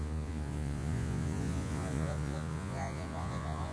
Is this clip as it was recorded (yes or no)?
no